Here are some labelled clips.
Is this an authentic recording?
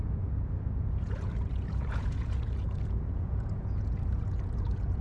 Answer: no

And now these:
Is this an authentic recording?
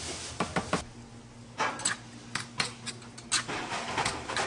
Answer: yes